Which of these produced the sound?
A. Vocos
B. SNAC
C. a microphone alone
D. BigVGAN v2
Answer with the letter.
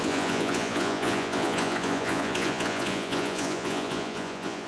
A